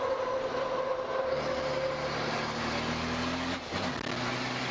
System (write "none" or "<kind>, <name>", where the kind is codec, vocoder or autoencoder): none